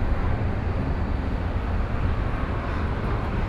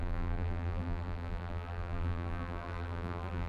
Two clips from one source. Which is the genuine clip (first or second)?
first